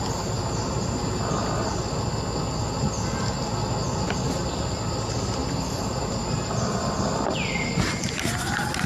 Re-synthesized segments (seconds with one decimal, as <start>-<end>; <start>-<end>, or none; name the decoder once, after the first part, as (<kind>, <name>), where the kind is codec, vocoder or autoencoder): 5.4-6.9 (vocoder, BigVGAN v2)